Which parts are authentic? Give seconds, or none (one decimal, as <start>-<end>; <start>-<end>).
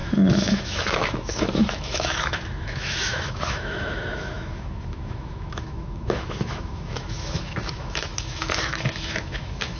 none